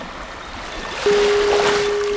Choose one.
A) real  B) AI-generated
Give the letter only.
A